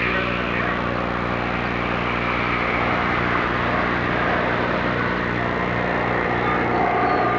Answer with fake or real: real